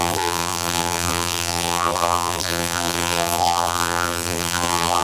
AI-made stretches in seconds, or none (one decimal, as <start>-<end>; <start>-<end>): 0.0-5.0